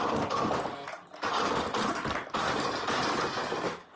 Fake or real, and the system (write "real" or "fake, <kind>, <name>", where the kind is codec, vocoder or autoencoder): real